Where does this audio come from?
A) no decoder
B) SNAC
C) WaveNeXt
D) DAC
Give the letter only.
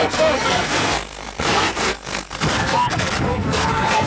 B